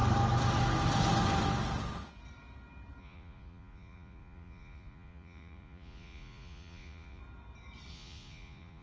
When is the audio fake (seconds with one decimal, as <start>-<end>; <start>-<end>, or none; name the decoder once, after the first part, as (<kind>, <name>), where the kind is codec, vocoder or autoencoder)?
3.0-7.2 (vocoder, Vocos); 7.9-8.8